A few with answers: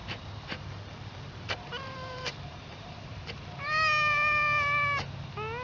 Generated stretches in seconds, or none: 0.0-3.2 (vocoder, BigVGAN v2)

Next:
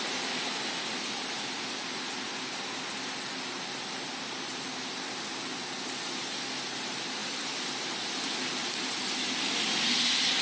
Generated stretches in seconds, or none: none

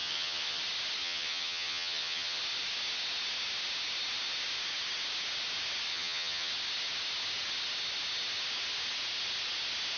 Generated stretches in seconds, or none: 0.0-0.6 (vocoder, HiFi-GAN); 1.0-2.4; 5.9-6.5

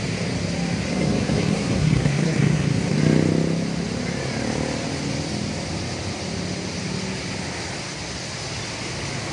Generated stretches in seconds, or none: 0.9-3.0 (codec, SNAC)

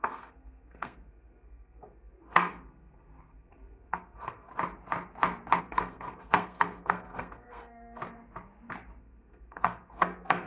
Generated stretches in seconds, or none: 0.0-4.5 (codec, SNAC); 5.6-8.0; 9.0-10.5

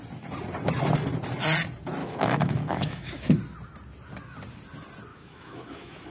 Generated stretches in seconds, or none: 2.0-3.4 (autoencoder, DAC-VAE); 5.1-6.1

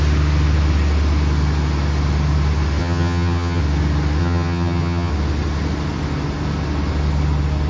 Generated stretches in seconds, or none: 2.8-3.6 (vocoder, HiFi-GAN); 4.2-5.1

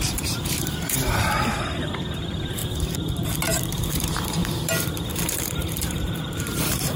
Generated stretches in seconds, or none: 0.0-2.6 (vocoder, BigVGAN v2); 3.8-4.4; 5.1-7.0